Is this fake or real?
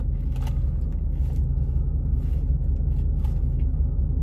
real